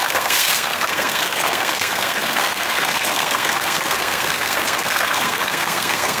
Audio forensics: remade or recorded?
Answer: remade